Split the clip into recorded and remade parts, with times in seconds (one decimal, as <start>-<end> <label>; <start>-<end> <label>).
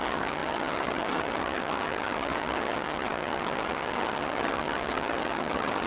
0.0-5.9 remade